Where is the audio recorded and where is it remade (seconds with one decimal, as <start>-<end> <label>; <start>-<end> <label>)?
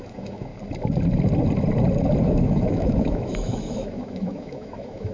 0.0-0.5 remade; 0.5-2.2 recorded; 2.2-5.1 remade